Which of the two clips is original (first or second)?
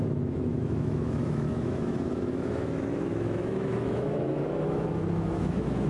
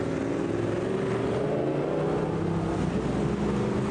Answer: second